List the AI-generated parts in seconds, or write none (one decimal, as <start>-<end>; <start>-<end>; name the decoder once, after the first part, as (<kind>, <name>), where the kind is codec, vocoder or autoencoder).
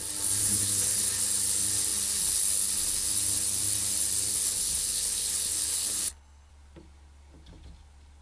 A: 0.4-1.2 (codec, HILCodec); 4.3-6.5